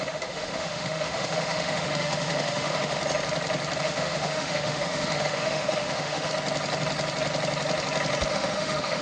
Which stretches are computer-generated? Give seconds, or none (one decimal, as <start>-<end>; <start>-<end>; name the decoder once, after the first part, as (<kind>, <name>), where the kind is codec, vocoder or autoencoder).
0.0-3.0 (autoencoder, DAC-VAE); 3.8-6.3; 8.3-9.0